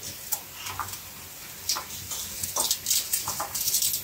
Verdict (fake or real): real